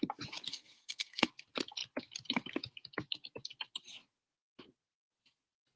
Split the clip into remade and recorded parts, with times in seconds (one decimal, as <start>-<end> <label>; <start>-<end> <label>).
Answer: 0.0-0.5 recorded; 0.5-1.3 remade; 1.3-5.8 recorded

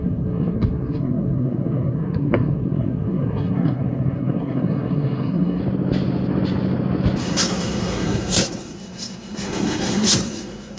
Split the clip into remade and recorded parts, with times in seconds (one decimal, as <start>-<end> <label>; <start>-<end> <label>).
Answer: 0.0-5.6 remade; 5.6-7.2 recorded; 7.2-10.8 remade

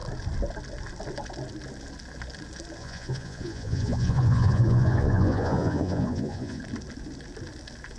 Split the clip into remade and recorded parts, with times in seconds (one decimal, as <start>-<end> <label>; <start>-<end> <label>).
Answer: 0.0-2.8 recorded; 2.8-6.6 remade; 6.6-8.0 recorded

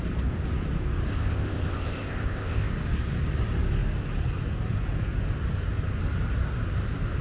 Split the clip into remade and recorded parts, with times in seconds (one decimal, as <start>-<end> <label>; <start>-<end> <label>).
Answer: 0.0-1.1 recorded; 1.1-2.7 remade; 2.7-7.2 recorded

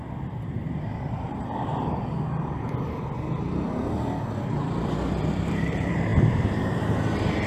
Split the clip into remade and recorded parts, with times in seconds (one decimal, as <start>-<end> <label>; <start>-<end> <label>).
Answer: 0.0-1.4 remade; 1.4-5.3 recorded; 5.3-7.5 remade